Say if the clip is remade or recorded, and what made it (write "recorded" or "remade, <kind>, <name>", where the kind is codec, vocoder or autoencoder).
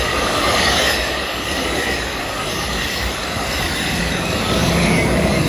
remade, codec, DAC